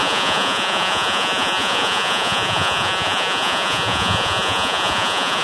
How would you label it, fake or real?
fake